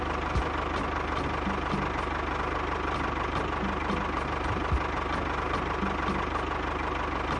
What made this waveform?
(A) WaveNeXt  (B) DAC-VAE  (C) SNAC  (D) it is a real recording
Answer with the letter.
D